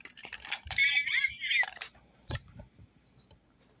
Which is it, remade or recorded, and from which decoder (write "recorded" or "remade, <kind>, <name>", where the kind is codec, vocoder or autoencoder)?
remade, vocoder, BigVGAN v2